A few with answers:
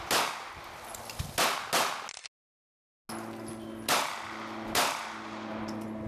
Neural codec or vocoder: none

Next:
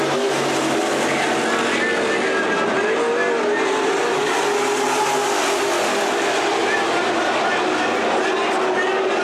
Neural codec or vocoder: none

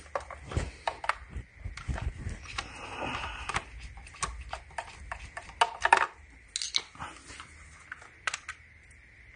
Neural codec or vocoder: none